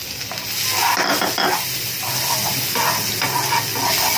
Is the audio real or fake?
real